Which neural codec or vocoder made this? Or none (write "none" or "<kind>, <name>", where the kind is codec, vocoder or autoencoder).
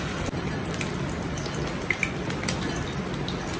none